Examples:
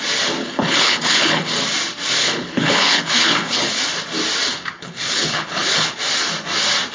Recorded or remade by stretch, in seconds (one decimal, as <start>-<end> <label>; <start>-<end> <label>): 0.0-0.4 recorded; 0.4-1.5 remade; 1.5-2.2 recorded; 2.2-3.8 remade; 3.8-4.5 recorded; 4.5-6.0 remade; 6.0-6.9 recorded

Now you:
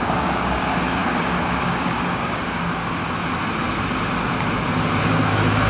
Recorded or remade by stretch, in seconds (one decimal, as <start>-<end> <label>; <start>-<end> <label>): 0.0-3.0 remade; 3.0-5.0 recorded; 5.0-5.7 remade

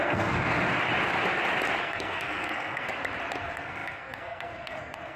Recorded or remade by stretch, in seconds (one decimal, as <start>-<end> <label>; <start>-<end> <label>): 0.0-0.5 remade; 0.5-1.8 recorded; 1.8-2.9 remade; 2.9-3.4 recorded; 3.4-5.2 remade

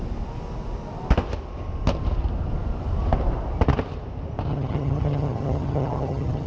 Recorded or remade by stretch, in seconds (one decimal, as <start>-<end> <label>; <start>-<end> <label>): 0.0-4.5 recorded; 4.5-6.5 remade